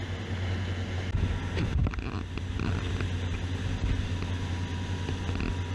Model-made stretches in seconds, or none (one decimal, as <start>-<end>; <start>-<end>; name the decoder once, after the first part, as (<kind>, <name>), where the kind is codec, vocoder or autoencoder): none